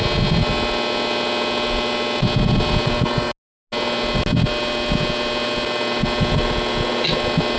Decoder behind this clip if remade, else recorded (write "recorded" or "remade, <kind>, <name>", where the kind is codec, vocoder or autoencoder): recorded